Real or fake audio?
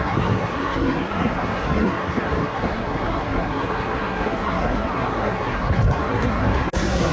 fake